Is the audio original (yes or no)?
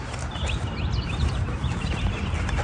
yes